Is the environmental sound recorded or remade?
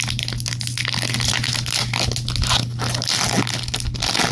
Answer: recorded